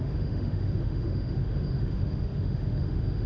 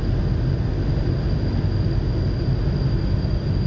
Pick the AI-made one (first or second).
first